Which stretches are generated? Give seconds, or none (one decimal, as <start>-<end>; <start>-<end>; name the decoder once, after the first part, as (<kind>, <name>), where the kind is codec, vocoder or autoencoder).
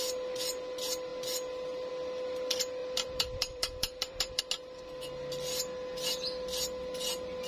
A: 2.8-4.4 (vocoder, BigVGAN v2)